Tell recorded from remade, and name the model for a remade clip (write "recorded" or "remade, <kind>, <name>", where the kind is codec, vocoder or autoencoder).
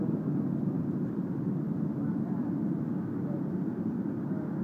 recorded